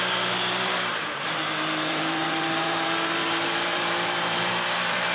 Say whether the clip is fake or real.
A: fake